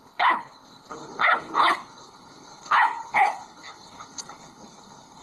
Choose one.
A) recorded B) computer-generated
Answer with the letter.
B